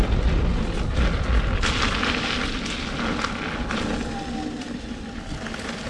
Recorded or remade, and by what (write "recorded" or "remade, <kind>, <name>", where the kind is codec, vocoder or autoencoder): recorded